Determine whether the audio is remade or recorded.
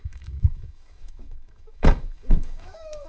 remade